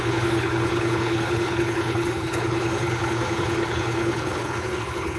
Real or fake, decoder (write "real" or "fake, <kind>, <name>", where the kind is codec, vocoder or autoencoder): fake, codec, HILCodec